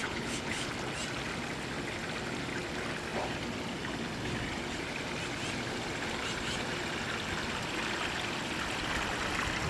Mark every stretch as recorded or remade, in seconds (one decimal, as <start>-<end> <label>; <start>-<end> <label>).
0.0-0.7 remade; 0.7-9.7 recorded